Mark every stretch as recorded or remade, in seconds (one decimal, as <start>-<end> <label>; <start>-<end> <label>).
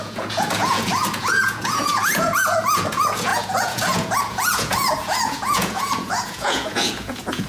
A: 0.0-7.5 remade